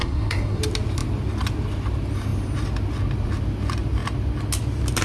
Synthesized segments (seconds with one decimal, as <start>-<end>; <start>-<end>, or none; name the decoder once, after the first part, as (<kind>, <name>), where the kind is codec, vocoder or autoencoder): 0.0-0.6 (codec, SNAC)